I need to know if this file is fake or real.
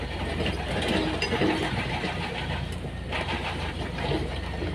fake